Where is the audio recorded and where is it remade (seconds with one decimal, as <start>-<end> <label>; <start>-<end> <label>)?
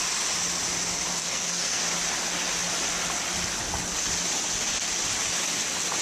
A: 0.0-1.2 recorded; 1.2-1.8 remade; 1.8-6.0 recorded